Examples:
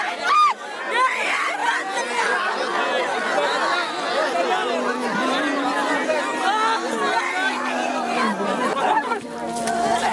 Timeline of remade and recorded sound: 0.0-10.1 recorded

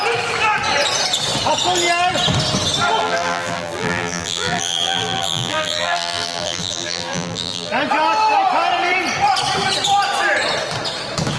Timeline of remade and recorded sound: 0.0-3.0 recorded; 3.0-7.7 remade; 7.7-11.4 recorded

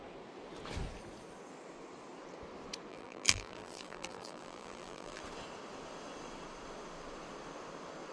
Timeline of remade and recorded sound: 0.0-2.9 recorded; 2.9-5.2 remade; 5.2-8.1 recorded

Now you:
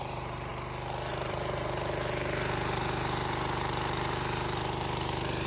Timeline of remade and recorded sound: 0.0-0.5 remade; 0.5-1.1 recorded; 1.1-5.5 remade

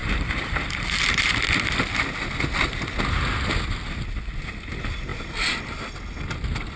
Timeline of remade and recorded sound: 0.0-1.3 remade; 1.3-6.8 recorded